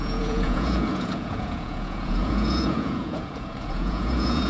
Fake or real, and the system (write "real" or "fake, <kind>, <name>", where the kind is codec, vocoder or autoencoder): fake, vocoder, Vocos